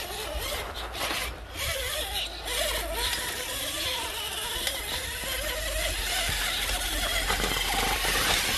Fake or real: real